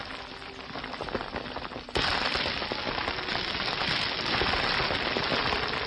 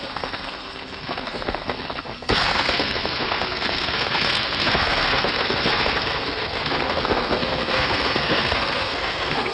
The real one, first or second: first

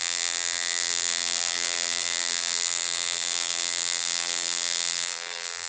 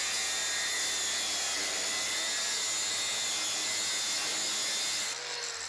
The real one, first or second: second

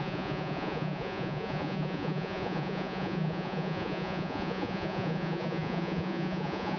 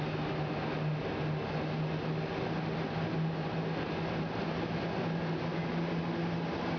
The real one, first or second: second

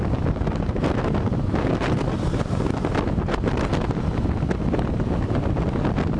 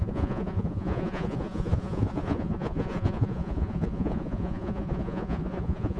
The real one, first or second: first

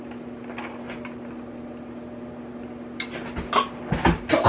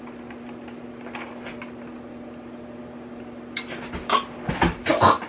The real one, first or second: first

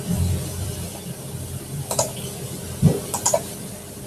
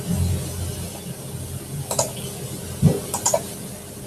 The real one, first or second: second